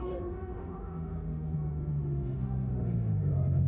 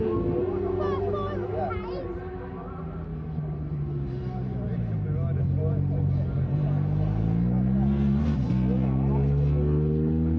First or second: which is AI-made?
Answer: first